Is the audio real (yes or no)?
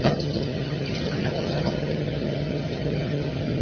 no